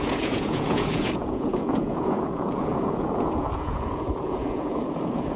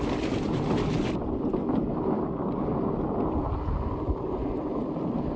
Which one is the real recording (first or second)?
second